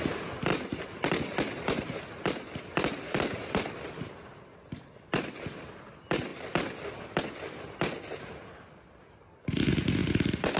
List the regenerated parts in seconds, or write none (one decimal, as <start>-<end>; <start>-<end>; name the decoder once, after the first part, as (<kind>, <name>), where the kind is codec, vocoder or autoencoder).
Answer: 0.5-4.1 (vocoder, BigVGAN v2); 6.3-7.2; 10.0-10.6